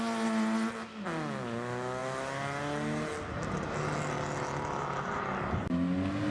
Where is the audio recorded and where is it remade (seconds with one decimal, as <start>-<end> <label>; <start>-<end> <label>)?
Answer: 0.0-6.3 recorded